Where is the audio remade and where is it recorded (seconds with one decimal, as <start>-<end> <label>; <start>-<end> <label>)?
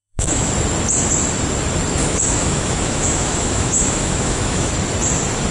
0.0-0.5 remade; 0.5-2.0 recorded; 2.0-4.7 remade; 4.7-5.5 recorded